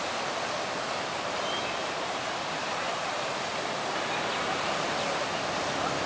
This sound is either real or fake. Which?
real